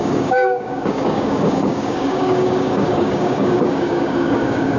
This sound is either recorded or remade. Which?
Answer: remade